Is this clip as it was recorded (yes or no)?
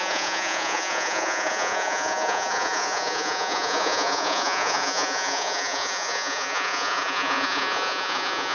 no